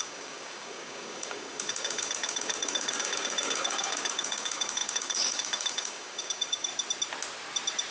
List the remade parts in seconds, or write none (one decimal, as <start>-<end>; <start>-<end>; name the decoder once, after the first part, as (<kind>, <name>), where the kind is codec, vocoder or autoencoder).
0.0-6.7 (codec, DAC)